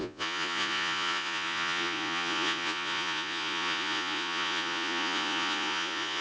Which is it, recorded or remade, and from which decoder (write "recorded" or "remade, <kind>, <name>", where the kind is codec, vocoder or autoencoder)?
remade, vocoder, Vocos